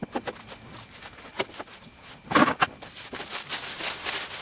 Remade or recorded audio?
recorded